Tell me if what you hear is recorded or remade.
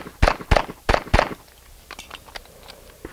recorded